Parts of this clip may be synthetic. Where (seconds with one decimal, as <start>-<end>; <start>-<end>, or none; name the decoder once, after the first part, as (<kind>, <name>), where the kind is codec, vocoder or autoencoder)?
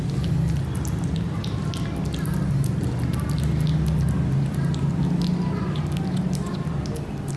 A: none